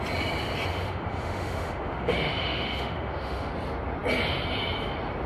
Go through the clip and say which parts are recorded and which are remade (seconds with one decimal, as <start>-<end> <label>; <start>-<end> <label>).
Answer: 0.0-0.7 recorded; 0.7-3.5 remade; 3.5-5.3 recorded